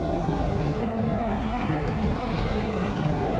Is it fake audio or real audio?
fake